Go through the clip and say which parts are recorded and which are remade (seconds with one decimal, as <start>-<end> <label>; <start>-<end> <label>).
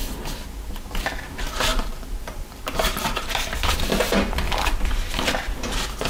0.0-1.7 recorded; 1.7-3.6 remade; 3.6-6.1 recorded